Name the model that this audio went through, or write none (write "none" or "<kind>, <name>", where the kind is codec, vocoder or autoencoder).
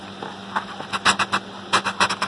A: none